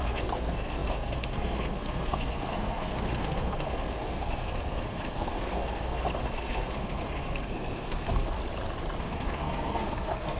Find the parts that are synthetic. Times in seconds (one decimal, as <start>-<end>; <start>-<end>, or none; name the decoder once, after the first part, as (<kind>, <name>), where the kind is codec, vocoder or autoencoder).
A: 0.0-8.4 (codec, SNAC); 9.0-10.4